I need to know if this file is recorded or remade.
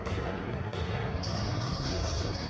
remade